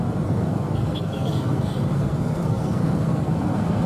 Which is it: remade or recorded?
remade